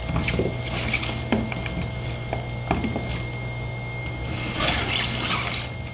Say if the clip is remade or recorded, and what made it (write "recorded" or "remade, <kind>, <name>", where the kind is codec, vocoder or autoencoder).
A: recorded